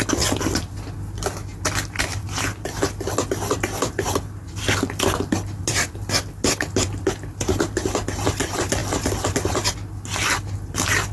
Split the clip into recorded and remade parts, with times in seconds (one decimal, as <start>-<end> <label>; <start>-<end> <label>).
0.0-11.1 recorded